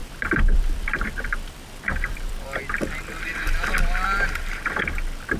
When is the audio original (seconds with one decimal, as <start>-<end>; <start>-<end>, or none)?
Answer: 2.6-5.4